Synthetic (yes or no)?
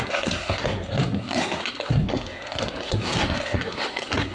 yes